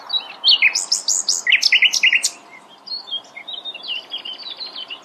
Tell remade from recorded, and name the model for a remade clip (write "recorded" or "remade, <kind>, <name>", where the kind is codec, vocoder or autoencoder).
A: recorded